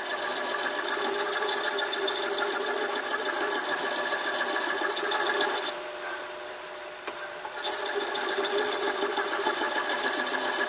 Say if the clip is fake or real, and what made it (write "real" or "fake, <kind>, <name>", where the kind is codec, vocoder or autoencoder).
fake, vocoder, BigVGAN v2